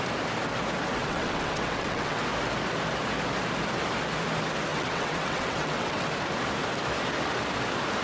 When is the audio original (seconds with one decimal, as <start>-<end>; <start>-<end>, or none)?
0.0-1.0; 2.2-4.7; 6.1-8.0